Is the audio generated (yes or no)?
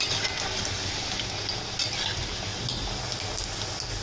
no